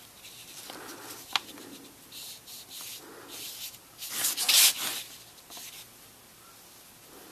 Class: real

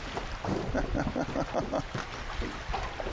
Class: real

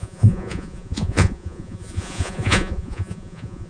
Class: fake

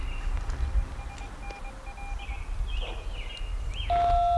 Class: real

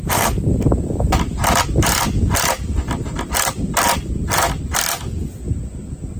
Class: real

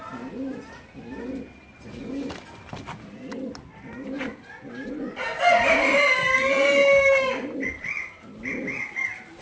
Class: real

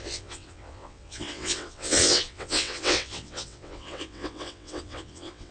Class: fake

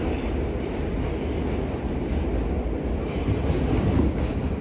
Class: real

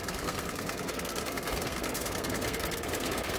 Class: fake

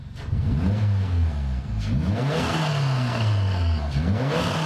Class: fake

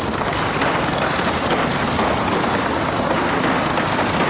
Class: real